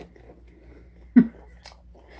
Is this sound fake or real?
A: real